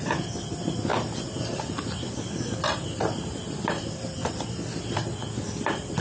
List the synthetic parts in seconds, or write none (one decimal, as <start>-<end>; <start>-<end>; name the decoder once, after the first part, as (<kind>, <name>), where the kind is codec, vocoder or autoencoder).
none